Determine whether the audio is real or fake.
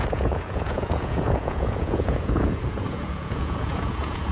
fake